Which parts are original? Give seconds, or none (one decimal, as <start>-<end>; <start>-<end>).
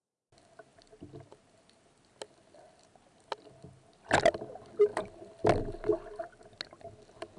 0.0-7.4